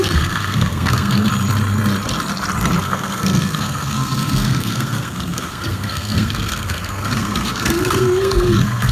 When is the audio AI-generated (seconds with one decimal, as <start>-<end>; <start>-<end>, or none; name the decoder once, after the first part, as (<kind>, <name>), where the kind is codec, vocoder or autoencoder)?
0.0-1.3 (codec, SNAC); 2.8-8.9